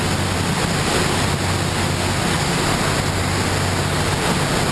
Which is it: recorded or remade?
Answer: recorded